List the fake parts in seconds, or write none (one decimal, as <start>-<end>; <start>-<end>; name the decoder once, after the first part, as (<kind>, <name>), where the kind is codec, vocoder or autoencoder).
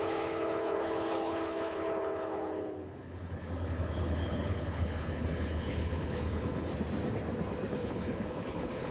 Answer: 0.0-6.7 (codec, HILCodec); 7.7-8.9